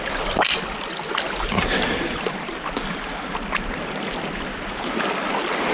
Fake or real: real